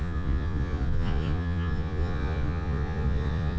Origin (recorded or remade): remade